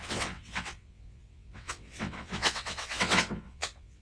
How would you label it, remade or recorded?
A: remade